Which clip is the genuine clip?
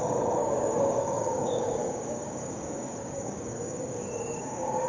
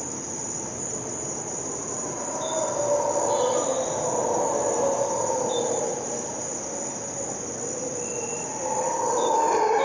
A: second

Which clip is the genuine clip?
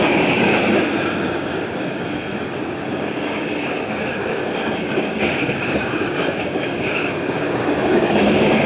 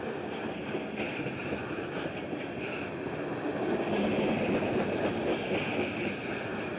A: second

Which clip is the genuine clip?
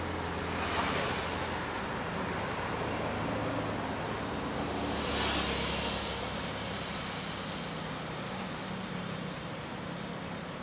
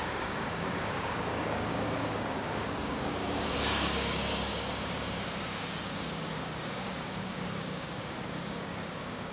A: first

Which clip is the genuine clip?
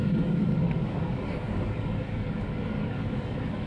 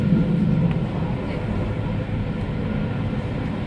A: second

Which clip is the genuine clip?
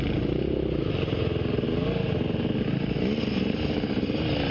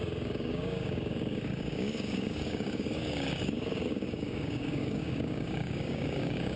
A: first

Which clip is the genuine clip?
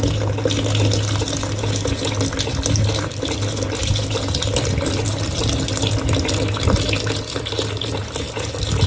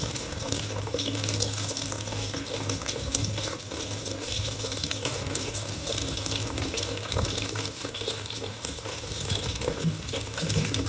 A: first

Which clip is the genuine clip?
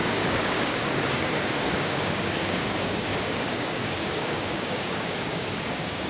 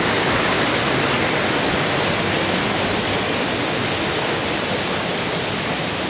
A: second